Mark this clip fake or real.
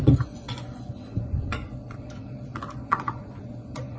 fake